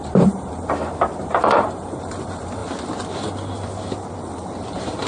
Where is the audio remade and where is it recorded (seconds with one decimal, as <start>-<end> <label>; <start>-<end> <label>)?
0.0-2.6 remade; 2.6-5.1 recorded